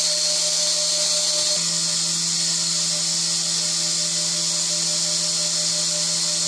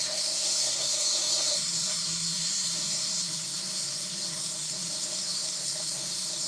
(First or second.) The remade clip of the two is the second